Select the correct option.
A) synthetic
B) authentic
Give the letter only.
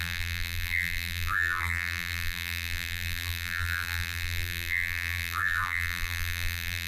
A